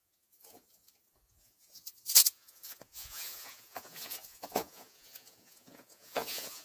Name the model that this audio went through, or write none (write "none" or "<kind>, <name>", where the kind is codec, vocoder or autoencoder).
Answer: vocoder, Vocos